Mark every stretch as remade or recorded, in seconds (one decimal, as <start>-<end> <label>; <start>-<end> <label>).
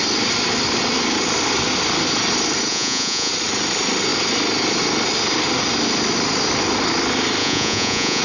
0.0-2.7 recorded; 2.7-3.3 remade; 3.3-7.4 recorded; 7.4-8.2 remade